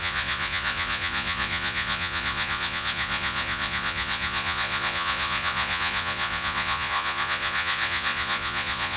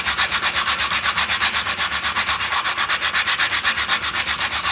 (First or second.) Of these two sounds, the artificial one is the first